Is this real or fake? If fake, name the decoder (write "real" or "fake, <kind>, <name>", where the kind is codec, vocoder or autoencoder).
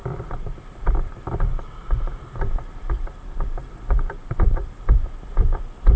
real